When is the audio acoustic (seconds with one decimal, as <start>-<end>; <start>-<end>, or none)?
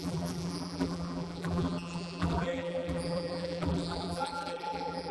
none